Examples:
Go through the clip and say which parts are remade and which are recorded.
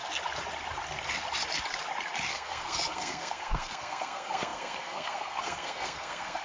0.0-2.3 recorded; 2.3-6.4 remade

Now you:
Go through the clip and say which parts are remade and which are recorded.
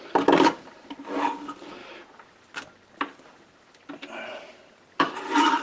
0.0-5.6 recorded